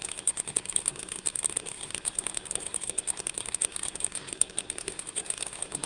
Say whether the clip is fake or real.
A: fake